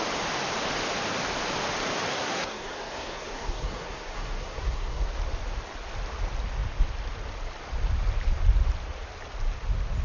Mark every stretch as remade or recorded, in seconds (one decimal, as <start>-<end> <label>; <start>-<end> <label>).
0.0-2.1 recorded; 2.1-5.1 remade; 5.1-10.0 recorded